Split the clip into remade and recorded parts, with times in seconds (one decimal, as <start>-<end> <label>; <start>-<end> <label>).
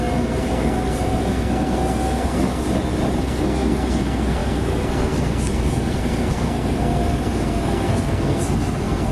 0.0-2.6 remade; 2.6-3.2 recorded; 3.2-9.1 remade